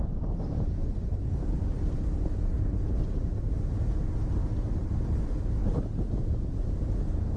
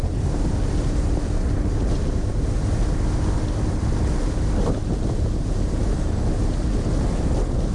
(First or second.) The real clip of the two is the second